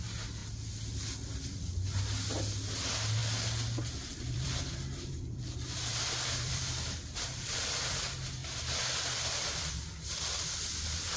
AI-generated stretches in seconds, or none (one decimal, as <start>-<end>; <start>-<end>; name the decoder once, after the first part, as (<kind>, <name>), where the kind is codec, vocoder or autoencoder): 3.2-7.9 (vocoder, BigVGAN v2)